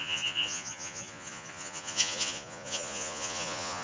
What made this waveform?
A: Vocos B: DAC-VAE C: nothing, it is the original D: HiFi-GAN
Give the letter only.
A